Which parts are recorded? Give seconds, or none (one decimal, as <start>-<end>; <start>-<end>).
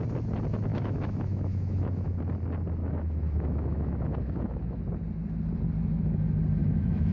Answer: 0.0-0.7; 2.2-2.8; 4.8-6.6